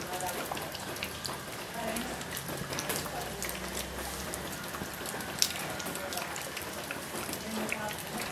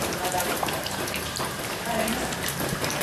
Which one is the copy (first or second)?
second